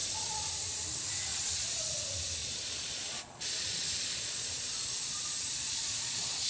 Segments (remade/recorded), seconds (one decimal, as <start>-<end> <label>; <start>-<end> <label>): 0.0-0.5 remade; 0.5-1.3 recorded; 1.3-2.0 remade; 2.0-2.4 recorded; 2.4-6.5 remade